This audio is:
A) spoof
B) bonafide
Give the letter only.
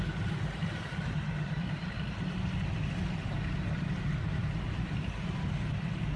B